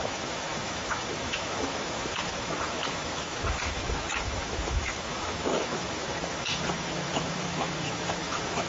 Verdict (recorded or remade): remade